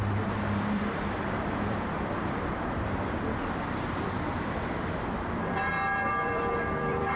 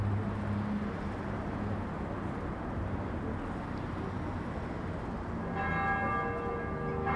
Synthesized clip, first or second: first